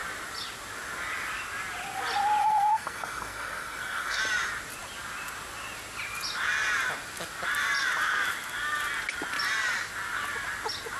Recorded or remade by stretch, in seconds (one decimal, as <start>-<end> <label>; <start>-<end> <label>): 0.0-2.4 recorded; 2.4-4.2 remade; 4.2-11.0 recorded